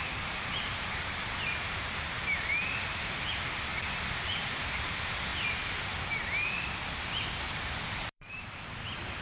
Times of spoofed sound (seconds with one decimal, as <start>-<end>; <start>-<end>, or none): 0.0-3.7; 4.5-5.3; 7.4-9.2